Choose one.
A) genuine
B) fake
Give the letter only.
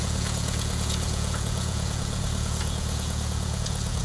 B